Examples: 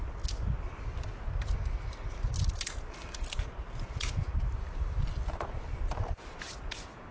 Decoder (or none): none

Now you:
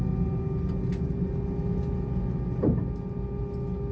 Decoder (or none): none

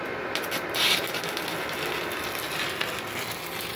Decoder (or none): none